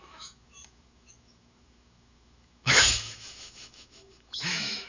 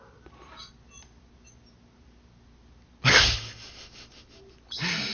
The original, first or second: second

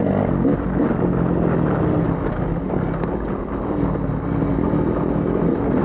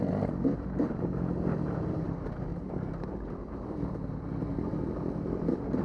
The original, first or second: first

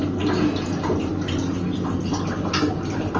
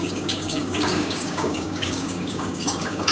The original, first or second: first